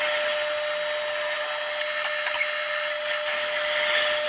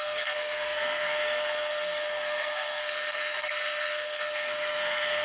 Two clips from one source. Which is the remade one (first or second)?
second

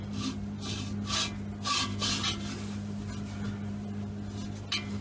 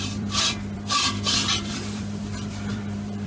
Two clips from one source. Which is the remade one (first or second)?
second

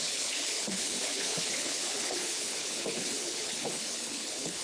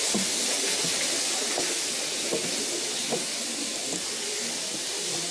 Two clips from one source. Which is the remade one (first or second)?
first